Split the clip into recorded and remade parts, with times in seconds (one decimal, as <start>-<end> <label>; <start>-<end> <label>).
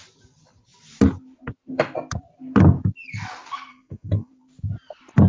0.0-3.7 recorded; 3.7-4.3 remade; 4.3-5.3 recorded